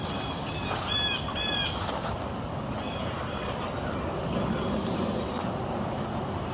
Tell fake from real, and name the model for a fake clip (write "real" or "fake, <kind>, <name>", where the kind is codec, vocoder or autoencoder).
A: real